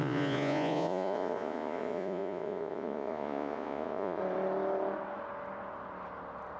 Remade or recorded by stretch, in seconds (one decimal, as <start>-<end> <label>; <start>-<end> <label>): 0.0-4.2 remade; 4.2-6.6 recorded